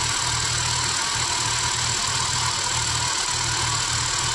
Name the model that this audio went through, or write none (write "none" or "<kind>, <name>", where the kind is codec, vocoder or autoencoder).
none